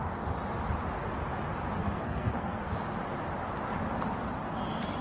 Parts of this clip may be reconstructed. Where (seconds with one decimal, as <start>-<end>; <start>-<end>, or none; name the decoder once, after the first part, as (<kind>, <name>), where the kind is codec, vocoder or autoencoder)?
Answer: 1.8-2.7 (codec, SNAC)